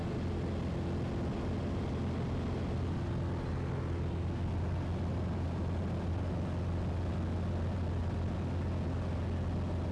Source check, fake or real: real